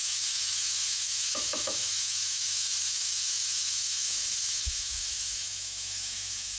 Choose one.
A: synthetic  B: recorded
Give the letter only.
A